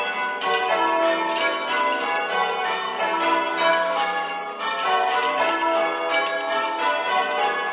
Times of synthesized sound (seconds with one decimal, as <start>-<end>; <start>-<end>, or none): 3.7-4.3